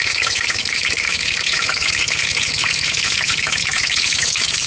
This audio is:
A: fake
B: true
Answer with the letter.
A